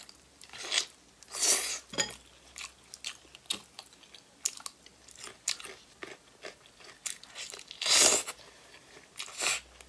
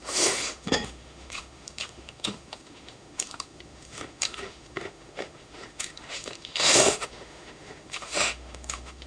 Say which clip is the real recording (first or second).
first